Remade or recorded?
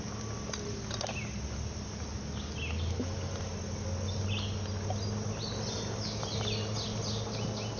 recorded